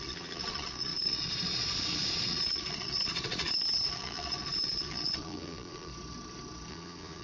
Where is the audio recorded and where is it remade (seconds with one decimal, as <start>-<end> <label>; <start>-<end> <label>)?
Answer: 0.0-5.9 remade; 5.9-6.7 recorded; 6.7-7.2 remade